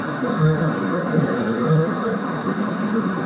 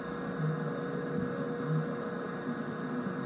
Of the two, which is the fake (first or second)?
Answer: first